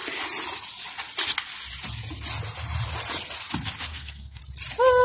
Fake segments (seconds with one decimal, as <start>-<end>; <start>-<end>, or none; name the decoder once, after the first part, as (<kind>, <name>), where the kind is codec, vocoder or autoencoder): 3.9-4.4 (codec, SNAC)